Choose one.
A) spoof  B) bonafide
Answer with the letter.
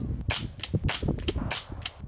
B